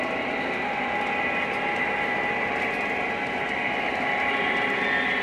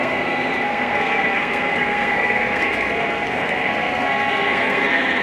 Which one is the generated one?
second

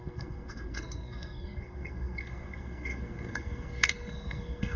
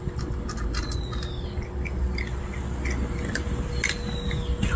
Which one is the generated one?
first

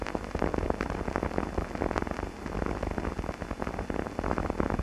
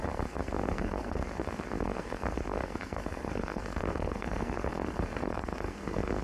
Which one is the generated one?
second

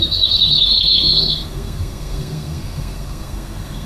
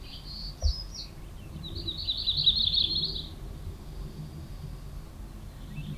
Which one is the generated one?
first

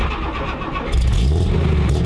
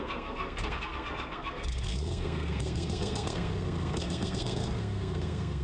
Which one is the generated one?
second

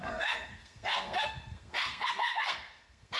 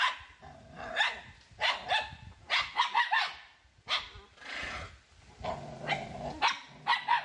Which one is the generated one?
first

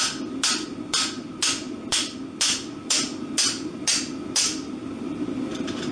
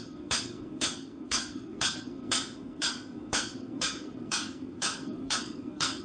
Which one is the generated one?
second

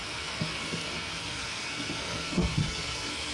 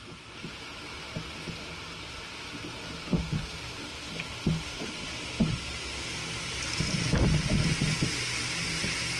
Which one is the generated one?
first